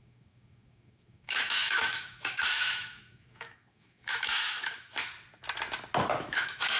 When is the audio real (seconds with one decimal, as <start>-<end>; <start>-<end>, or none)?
5.1-6.2